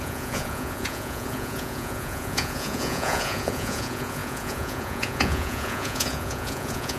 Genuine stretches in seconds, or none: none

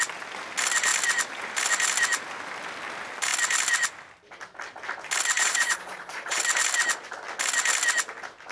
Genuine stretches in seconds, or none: 0.0-5.4; 6.4-8.5

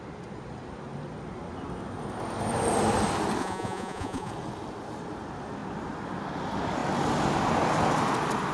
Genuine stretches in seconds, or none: 0.0-3.4; 4.3-8.5

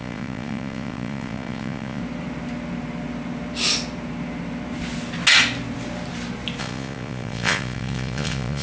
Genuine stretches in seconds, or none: 2.0-6.6

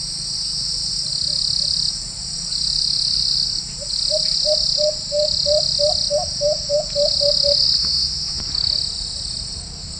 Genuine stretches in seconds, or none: 0.0-7.8; 8.4-10.0

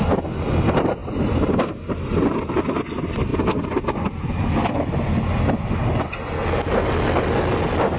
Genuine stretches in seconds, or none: 0.0-8.0

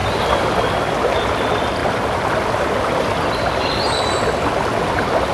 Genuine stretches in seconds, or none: 0.0-5.3